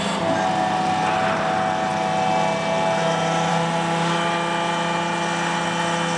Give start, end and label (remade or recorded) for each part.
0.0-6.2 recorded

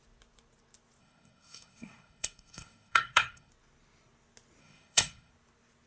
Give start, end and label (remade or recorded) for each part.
0.0-1.0 recorded; 1.0-3.5 remade; 3.5-4.6 recorded; 4.6-5.3 remade; 5.3-5.9 recorded

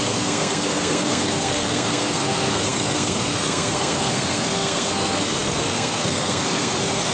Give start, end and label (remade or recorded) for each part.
0.0-7.1 remade

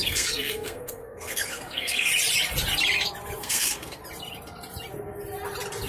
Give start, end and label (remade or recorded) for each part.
0.0-2.1 remade; 2.1-3.4 recorded; 3.4-4.0 remade; 4.0-5.9 recorded

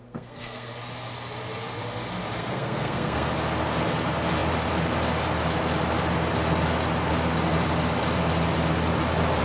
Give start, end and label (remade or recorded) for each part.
0.0-0.7 remade; 0.7-2.4 recorded; 2.4-3.3 remade; 3.3-9.4 recorded